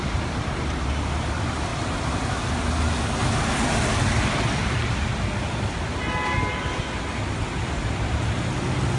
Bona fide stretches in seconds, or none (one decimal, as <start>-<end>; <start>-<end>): 0.0-9.0